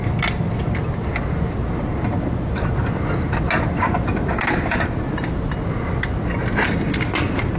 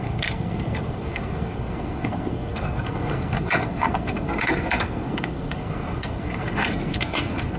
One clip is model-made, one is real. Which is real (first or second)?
first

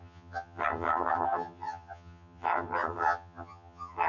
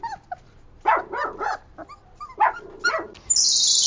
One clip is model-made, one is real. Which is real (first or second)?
second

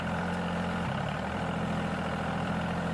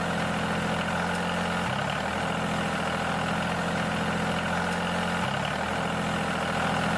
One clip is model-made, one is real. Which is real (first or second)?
second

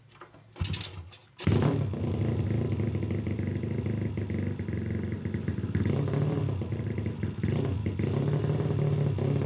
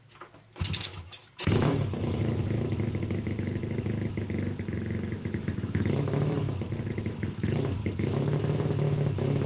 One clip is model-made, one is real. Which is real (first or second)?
first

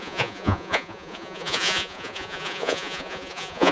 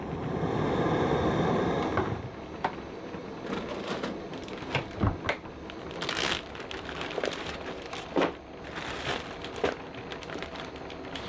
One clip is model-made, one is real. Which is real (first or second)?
second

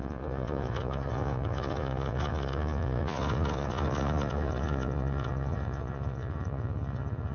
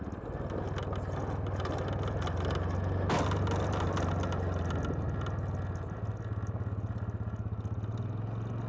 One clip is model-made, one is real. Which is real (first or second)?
second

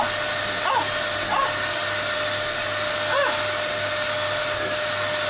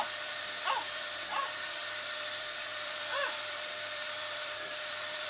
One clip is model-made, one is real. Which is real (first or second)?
first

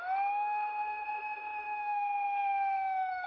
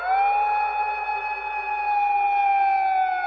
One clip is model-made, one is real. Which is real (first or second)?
second